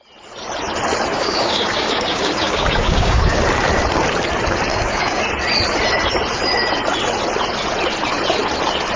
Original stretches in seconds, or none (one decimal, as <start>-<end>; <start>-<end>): 0.0-1.1; 3.4-4.7; 5.2-9.0